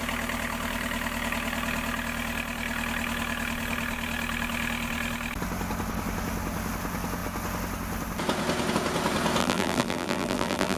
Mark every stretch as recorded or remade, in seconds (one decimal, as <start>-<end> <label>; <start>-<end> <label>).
0.0-9.4 recorded; 9.4-10.8 remade

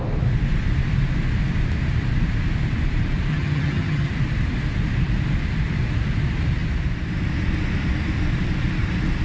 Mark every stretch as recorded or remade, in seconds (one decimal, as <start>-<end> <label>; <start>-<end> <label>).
0.0-3.3 recorded; 3.3-4.1 remade; 4.1-9.2 recorded

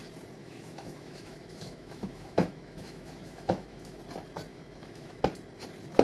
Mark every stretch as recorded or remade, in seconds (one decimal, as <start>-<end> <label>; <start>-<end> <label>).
0.0-0.4 recorded; 0.4-4.0 remade; 4.0-4.5 recorded; 4.5-5.2 remade; 5.2-6.0 recorded